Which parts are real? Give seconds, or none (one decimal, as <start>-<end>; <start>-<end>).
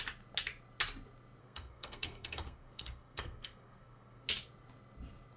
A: 0.0-1.4; 4.3-5.4